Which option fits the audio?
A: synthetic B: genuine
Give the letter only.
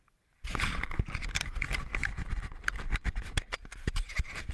B